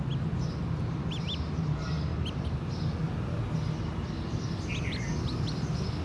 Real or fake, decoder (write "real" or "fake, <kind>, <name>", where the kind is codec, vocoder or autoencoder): real